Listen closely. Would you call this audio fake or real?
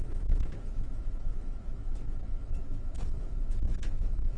fake